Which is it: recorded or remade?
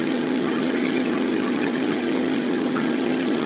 remade